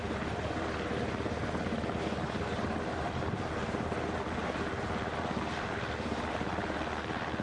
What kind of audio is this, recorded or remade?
remade